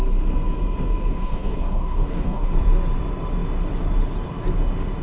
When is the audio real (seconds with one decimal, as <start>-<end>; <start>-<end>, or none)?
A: 0.0-1.1; 2.5-5.0